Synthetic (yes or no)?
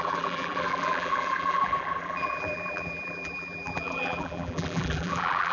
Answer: yes